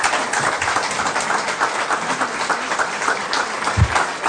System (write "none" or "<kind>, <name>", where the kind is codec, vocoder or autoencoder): none